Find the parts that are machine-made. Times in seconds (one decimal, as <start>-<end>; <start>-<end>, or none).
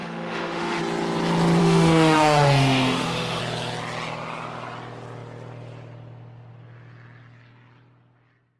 0.0-0.8; 1.6-3.4